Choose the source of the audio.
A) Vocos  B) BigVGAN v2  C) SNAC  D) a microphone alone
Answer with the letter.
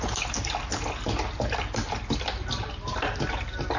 D